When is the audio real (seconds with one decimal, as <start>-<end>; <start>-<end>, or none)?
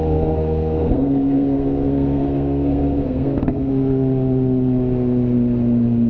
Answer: 3.7-6.1